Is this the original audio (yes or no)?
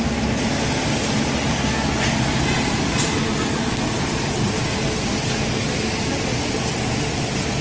yes